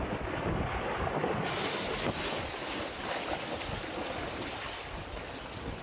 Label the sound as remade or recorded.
recorded